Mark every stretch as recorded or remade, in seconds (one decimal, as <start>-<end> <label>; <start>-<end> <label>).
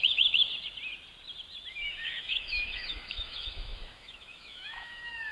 0.0-0.5 remade; 0.5-1.7 recorded; 1.7-5.3 remade